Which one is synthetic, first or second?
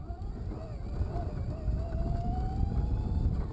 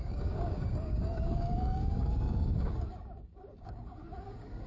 second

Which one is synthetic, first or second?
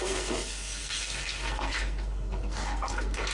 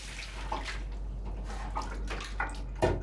first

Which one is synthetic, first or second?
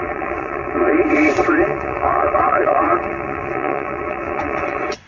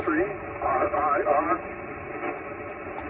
first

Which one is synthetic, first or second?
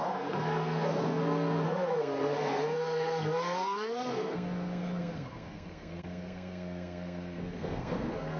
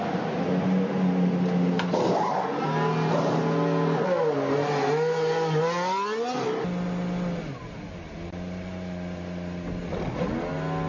first